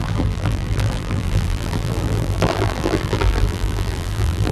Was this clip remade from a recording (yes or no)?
yes